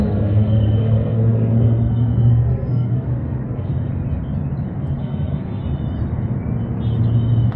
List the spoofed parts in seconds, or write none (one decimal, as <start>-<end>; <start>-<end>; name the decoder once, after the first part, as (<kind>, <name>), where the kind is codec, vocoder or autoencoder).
0.0-3.7 (codec, SNAC); 5.0-5.6